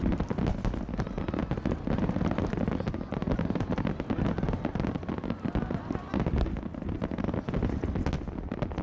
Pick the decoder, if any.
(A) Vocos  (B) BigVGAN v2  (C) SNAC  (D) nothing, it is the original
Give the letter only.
D